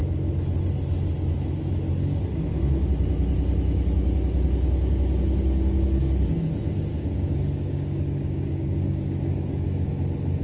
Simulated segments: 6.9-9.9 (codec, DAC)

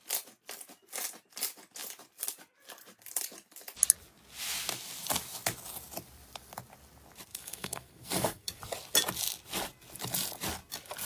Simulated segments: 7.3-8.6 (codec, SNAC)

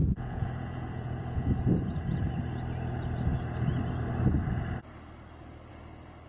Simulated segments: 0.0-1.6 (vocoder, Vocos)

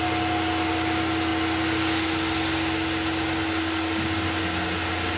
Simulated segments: none

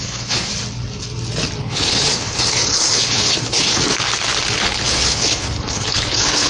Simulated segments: 0.0-0.5 (codec, HILCodec); 1.6-3.8; 4.6-6.5